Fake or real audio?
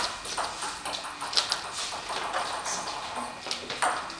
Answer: real